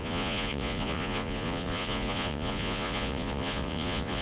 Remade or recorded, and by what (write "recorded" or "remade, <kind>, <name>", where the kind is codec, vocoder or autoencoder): remade, vocoder, Vocos